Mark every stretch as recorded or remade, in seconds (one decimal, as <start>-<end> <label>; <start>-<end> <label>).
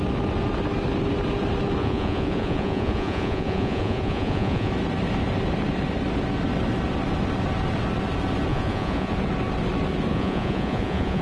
0.0-1.8 recorded; 1.8-4.7 remade; 4.7-8.5 recorded; 8.5-9.1 remade; 9.1-10.1 recorded; 10.1-11.2 remade